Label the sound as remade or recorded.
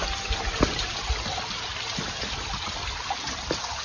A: recorded